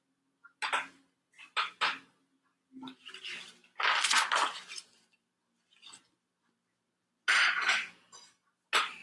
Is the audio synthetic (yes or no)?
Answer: no